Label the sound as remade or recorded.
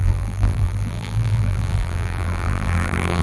remade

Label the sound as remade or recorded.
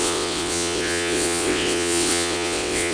remade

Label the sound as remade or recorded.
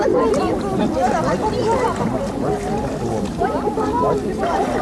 recorded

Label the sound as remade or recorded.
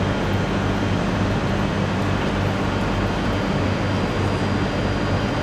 recorded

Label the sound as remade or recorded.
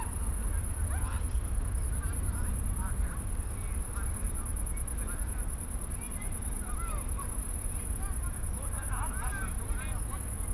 recorded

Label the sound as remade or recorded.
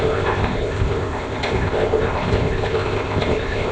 remade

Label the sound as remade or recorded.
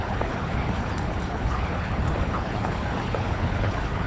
remade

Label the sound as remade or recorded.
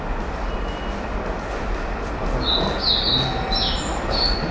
recorded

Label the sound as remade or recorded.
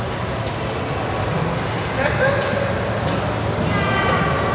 recorded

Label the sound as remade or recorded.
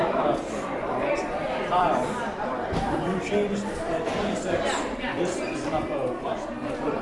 remade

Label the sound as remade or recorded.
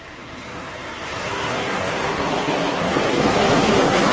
remade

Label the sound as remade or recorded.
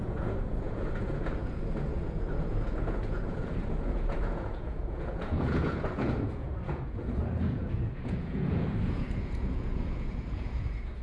remade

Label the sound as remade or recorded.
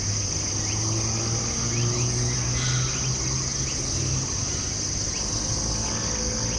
recorded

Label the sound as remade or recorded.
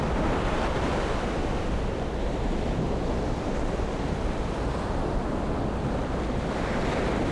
recorded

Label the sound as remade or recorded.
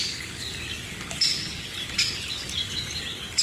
remade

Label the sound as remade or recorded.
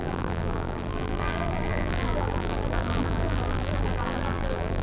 remade